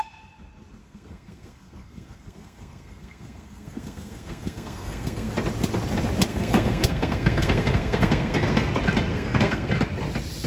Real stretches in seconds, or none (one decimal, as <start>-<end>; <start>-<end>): 0.0-0.8; 5.3-6.3; 8.7-9.1; 9.7-10.5